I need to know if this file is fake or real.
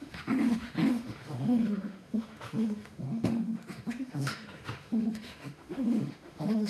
fake